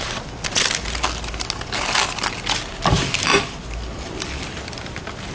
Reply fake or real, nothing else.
real